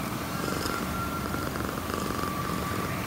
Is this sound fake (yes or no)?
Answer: yes